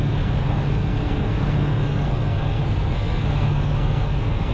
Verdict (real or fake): fake